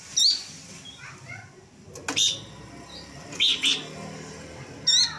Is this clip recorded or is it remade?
recorded